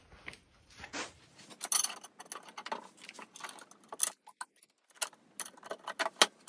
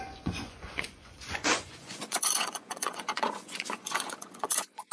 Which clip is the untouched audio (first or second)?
first